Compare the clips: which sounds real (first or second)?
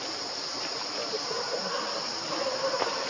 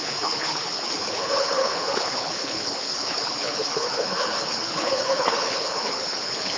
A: first